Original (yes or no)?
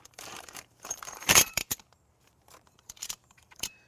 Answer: no